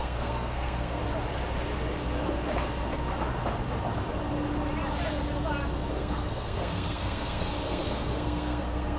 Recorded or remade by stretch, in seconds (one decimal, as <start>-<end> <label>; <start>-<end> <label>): 0.0-1.0 remade; 1.0-5.9 recorded; 5.9-9.0 remade